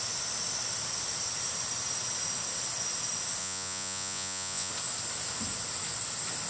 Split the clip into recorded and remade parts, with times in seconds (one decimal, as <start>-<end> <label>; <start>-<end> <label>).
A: 0.0-3.4 recorded; 3.4-4.7 remade; 4.7-6.5 recorded